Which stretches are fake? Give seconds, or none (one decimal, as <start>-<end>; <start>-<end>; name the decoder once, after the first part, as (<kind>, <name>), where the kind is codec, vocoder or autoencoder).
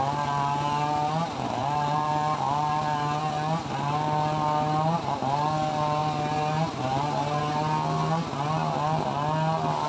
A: 1.6-2.1 (vocoder, BigVGAN v2)